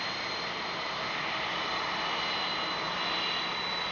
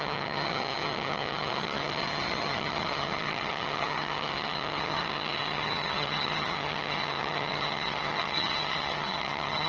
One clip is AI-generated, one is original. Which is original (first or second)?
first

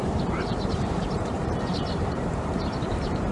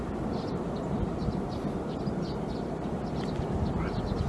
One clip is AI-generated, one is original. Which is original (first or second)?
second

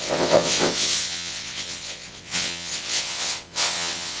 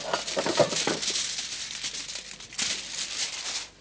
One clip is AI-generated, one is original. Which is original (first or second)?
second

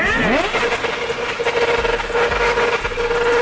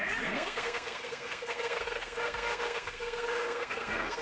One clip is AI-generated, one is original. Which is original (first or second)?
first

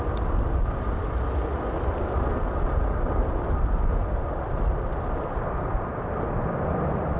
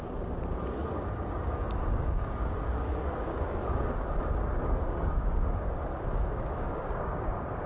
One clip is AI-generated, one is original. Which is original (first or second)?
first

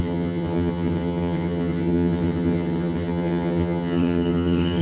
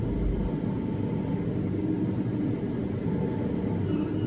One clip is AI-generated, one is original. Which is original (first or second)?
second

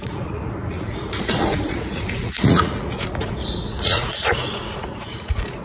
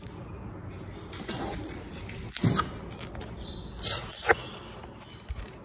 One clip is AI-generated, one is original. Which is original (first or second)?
second